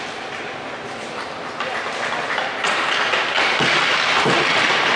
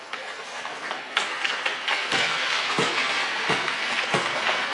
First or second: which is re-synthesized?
second